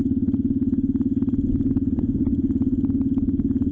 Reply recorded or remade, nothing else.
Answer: recorded